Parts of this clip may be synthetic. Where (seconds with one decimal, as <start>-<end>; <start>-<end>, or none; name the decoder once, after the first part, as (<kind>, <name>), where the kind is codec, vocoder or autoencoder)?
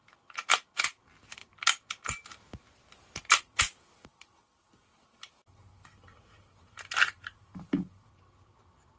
none